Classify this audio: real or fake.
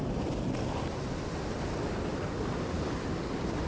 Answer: real